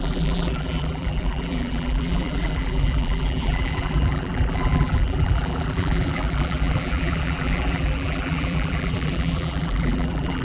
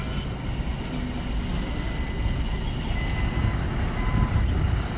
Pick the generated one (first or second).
first